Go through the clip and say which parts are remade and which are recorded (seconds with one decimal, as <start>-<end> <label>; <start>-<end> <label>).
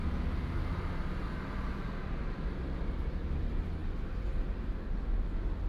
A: 0.0-5.7 recorded